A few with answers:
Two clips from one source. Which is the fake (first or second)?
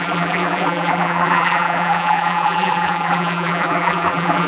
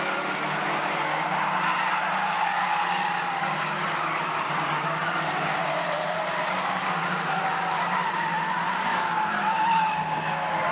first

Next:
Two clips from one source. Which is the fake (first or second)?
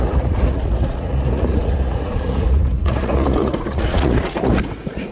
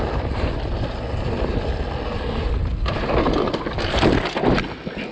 first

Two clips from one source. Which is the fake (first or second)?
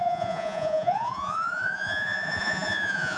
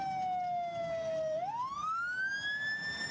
first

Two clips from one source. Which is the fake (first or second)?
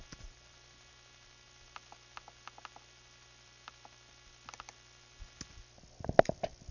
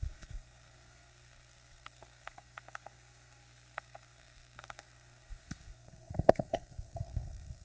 second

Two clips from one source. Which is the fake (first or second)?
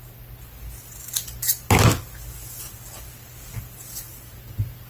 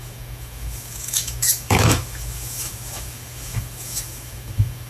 second